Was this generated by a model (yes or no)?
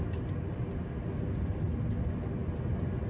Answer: no